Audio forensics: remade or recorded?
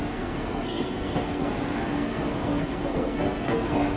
remade